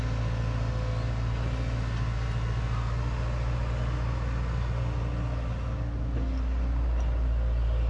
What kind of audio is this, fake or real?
real